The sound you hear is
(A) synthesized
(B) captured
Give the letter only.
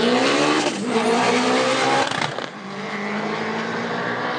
B